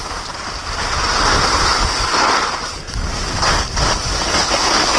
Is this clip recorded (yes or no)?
yes